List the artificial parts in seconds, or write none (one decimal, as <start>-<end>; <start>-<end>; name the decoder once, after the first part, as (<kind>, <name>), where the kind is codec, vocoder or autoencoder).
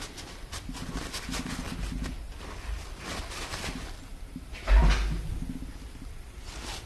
none